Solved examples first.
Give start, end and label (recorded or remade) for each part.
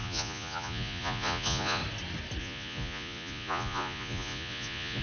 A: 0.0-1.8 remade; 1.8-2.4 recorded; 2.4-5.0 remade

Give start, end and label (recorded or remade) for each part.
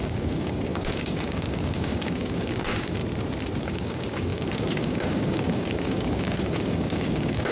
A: 0.0-3.0 remade; 3.0-3.6 recorded; 3.6-7.5 remade